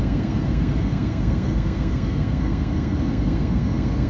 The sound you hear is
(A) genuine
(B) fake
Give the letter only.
B